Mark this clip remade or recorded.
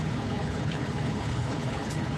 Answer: remade